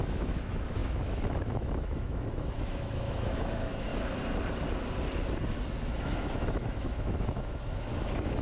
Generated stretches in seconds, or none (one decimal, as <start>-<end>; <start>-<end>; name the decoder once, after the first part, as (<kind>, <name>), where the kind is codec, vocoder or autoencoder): 0.0-3.9 (autoencoder, DAC-VAE); 6.0-8.4

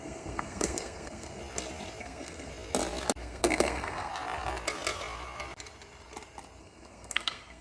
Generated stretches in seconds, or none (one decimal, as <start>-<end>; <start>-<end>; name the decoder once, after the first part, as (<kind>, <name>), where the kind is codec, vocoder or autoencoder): 0.0-1.4 (codec, SNAC); 2.0-2.5; 3.2-4.1; 6.6-7.6

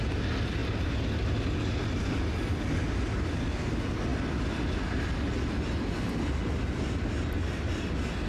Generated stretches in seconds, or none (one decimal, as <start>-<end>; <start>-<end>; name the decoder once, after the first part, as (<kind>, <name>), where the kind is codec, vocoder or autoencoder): none

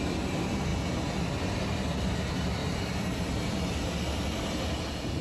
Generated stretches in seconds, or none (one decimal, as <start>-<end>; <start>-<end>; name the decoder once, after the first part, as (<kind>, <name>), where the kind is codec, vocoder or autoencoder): none

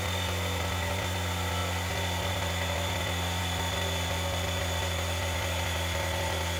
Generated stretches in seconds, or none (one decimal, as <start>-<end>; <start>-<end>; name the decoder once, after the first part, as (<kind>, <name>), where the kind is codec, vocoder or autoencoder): none

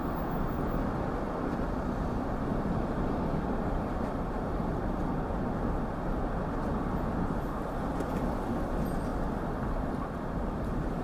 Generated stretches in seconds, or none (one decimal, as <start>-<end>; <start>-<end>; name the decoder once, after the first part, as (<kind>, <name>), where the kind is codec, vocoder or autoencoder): 0.0-5.0 (vocoder, BigVGAN v2); 8.2-9.1; 10.6-11.0

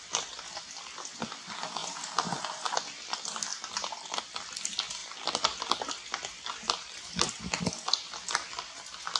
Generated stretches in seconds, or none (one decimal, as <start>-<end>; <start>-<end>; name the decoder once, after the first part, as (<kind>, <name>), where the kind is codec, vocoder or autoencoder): 3.5-4.2 (vocoder, BigVGAN v2)

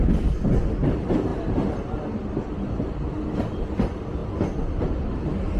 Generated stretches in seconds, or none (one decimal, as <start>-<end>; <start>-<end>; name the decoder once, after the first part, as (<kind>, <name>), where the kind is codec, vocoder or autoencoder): none